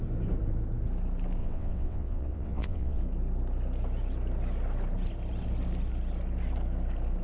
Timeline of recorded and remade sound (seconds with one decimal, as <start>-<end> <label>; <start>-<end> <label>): 0.0-1.4 recorded; 1.4-3.0 remade; 3.0-7.2 recorded